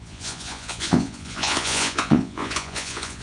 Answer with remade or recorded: remade